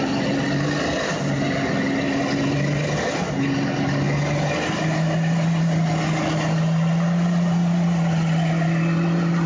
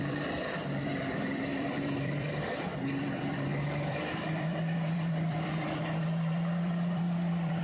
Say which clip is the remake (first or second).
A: second